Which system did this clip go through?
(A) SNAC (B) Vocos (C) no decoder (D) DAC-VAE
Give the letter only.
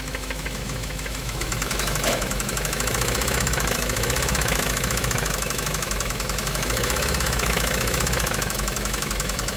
D